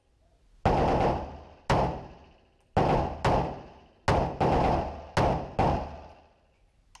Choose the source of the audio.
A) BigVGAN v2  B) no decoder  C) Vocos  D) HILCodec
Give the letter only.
B